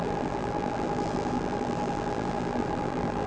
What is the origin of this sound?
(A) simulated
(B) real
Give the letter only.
A